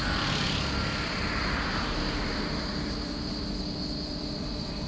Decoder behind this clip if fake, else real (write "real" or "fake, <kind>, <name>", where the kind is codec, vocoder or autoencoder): real